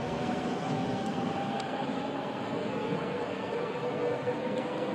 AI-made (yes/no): yes